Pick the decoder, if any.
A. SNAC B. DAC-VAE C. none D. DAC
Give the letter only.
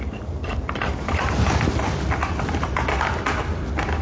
C